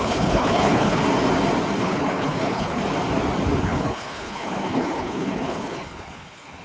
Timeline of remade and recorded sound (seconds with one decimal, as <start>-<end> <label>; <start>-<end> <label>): 0.0-1.0 remade; 1.0-1.8 recorded; 1.8-2.8 remade; 2.8-3.6 recorded; 3.6-6.6 remade

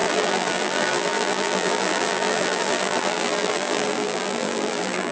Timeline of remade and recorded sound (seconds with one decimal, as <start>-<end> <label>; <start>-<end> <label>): 0.0-5.1 remade

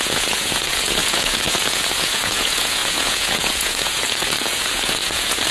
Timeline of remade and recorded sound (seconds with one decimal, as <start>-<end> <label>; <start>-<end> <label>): 0.0-5.5 remade

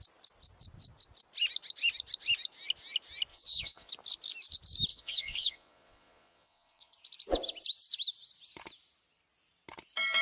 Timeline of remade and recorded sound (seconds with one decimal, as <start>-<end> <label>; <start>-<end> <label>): 0.0-3.3 recorded; 3.3-3.9 remade; 3.9-4.9 recorded; 4.9-6.9 remade; 6.9-10.2 recorded

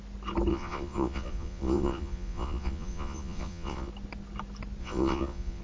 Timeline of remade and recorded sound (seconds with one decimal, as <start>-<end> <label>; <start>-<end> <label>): 0.0-0.5 recorded; 0.5-3.9 remade; 3.9-4.8 recorded; 4.8-5.6 remade

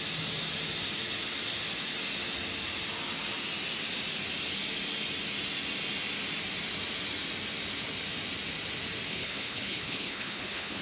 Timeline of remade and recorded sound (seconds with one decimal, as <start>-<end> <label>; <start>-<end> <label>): 0.0-9.1 recorded; 9.1-10.8 remade